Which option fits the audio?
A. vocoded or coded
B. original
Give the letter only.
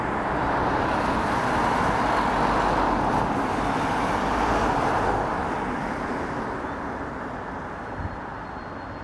B